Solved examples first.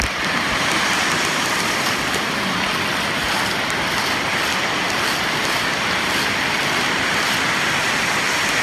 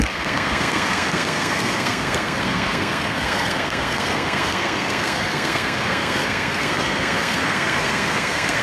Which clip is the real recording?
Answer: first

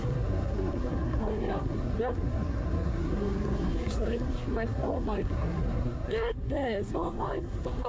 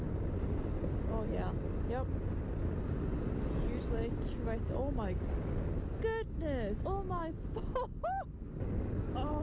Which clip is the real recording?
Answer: second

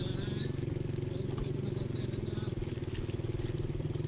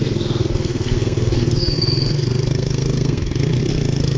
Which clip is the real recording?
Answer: first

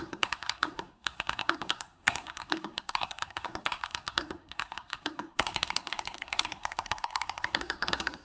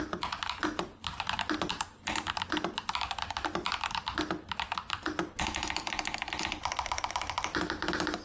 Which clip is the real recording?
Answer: second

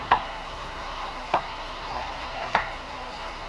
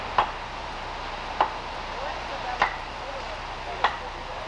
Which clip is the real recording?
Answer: second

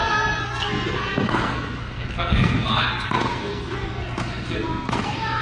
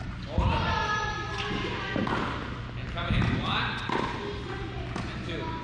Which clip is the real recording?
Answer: second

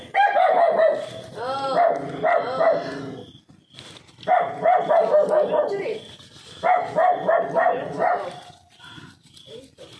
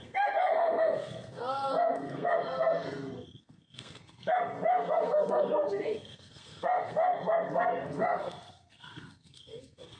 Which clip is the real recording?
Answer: first